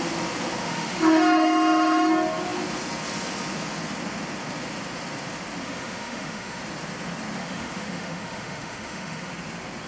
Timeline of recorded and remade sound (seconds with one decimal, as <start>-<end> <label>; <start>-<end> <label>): 0.0-0.6 recorded; 0.6-2.1 remade; 2.1-5.6 recorded; 5.6-6.6 remade; 6.6-7.4 recorded; 7.4-9.3 remade; 9.3-9.9 recorded